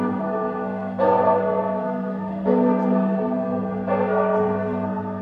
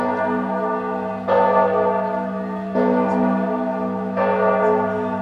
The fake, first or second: first